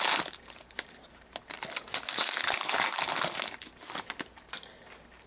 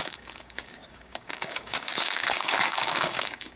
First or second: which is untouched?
first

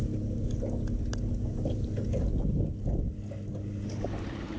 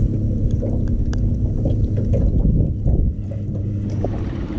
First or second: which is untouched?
first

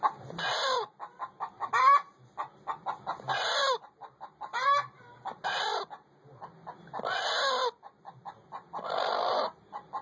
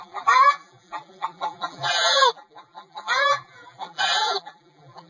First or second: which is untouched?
first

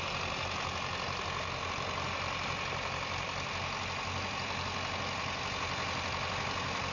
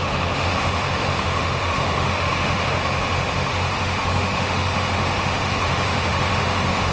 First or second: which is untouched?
first